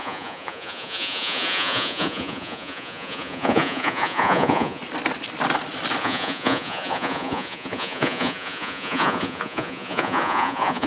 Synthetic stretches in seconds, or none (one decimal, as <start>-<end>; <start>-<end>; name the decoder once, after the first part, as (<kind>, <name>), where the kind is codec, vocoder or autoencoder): 0.0-4.8 (vocoder, Vocos); 6.0-10.9